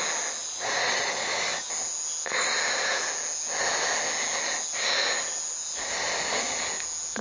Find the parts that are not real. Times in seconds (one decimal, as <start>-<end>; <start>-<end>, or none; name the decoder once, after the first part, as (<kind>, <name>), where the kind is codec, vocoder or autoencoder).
none